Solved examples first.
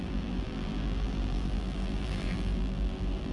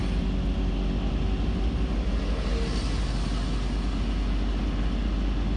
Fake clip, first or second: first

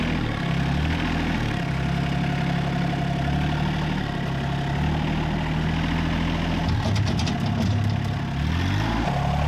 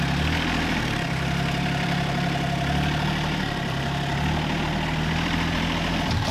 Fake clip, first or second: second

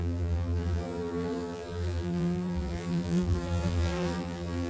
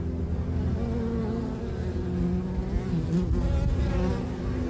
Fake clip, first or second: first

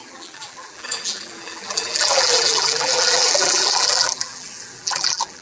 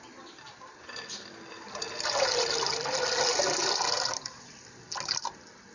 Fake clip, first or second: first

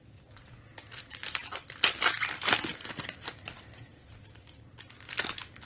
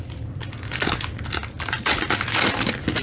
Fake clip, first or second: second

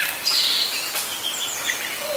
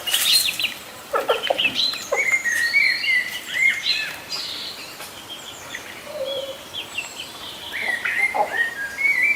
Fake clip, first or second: second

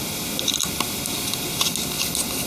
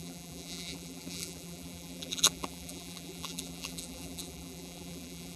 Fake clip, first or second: second